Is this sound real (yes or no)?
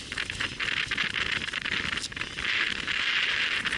yes